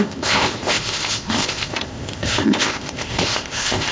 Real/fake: fake